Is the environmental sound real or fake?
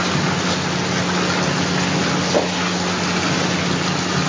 real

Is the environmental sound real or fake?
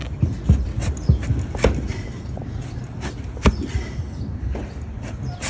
real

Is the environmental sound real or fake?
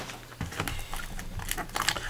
real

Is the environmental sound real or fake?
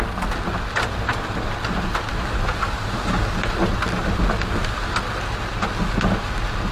real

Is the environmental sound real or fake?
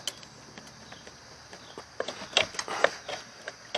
real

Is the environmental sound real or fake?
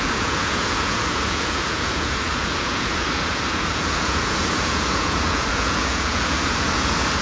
fake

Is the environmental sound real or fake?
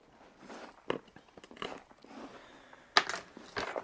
real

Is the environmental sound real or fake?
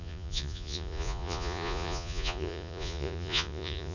fake